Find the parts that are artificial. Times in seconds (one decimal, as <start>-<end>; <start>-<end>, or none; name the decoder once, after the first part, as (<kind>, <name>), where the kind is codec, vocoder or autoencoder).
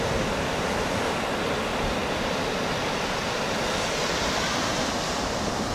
none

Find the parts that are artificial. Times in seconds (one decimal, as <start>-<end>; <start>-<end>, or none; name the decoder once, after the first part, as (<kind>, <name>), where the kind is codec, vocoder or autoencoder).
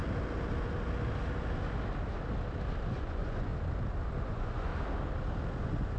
2.9-3.5 (vocoder, Vocos); 4.2-4.7; 5.6-6.0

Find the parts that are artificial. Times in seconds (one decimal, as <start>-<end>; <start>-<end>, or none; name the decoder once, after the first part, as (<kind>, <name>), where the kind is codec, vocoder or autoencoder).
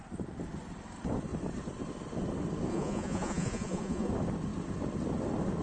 2.7-4.1 (vocoder, Vocos)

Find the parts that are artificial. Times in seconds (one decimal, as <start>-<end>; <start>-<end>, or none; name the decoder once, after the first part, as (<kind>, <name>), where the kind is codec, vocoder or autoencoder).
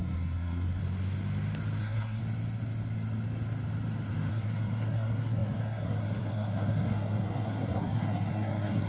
0.0-0.8 (codec, SNAC); 1.8-2.2; 4.3-8.9